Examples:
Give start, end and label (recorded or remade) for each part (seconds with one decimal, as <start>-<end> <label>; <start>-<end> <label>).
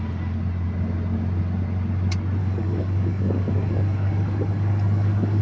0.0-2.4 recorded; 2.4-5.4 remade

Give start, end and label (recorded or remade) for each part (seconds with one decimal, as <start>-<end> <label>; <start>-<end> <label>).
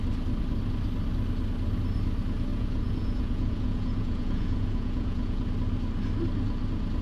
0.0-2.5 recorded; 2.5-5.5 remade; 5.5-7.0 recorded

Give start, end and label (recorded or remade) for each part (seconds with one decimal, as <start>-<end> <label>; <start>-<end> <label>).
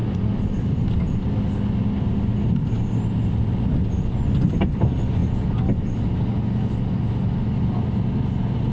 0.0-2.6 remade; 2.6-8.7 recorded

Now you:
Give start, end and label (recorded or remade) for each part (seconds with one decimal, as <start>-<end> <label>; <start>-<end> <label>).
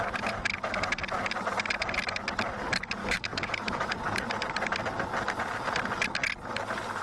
0.0-3.0 recorded; 3.0-3.9 remade; 3.9-7.0 recorded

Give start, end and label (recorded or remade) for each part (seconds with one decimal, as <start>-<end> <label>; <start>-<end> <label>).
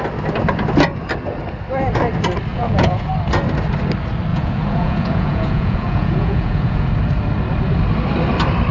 0.0-2.5 recorded; 2.5-3.1 remade; 3.1-4.3 recorded; 4.3-6.9 remade; 6.9-8.7 recorded